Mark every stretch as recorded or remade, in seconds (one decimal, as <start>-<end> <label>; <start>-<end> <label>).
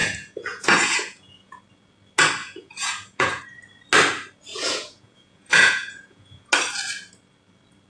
0.0-1.6 remade; 1.6-2.4 recorded; 2.4-3.4 remade; 3.4-4.5 recorded; 4.5-6.5 remade; 6.5-7.9 recorded